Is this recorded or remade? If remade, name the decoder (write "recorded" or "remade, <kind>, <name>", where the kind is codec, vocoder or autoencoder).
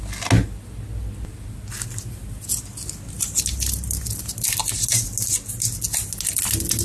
recorded